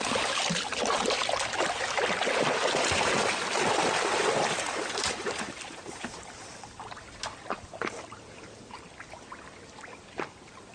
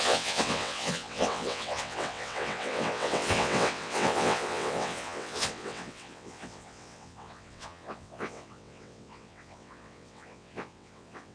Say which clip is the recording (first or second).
first